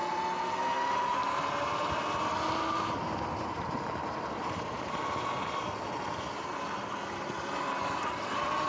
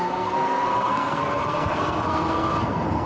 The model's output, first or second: second